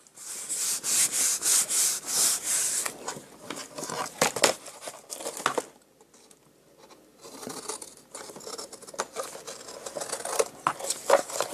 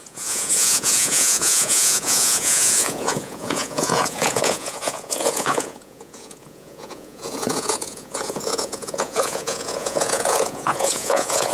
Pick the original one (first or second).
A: first